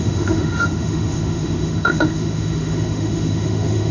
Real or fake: fake